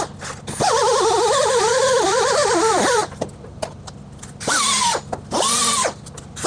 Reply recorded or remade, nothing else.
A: recorded